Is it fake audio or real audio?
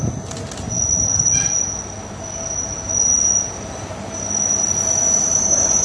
real